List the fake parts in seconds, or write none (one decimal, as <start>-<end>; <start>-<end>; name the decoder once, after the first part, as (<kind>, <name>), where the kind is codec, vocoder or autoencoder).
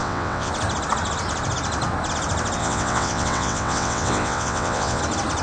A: 0.0-0.5 (vocoder, WaveNeXt); 2.6-5.0